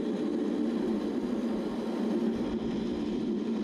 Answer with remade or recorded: remade